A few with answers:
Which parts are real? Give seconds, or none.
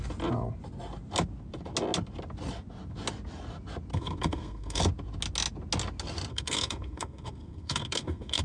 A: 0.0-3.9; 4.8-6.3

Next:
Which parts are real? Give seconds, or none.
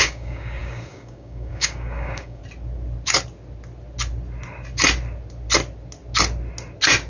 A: 2.4-7.1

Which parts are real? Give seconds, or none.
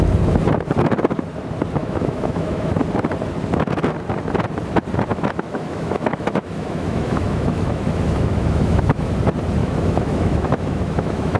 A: 0.0-1.8; 2.8-5.1; 9.2-9.6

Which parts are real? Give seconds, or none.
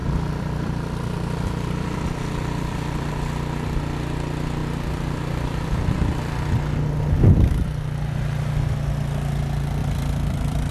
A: 3.1-4.6; 6.3-9.8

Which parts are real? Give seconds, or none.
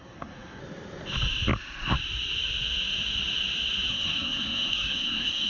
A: 0.6-3.9